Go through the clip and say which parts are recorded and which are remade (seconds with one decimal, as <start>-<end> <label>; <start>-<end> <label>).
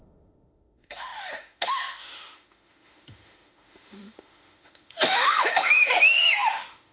0.0-6.9 remade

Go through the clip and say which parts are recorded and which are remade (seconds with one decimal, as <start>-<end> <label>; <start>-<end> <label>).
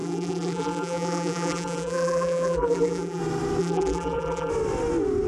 0.0-3.2 remade; 3.2-3.6 recorded; 3.6-4.5 remade; 4.5-5.3 recorded